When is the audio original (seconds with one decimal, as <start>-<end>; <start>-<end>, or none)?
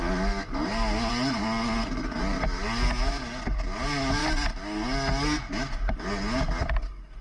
0.0-7.2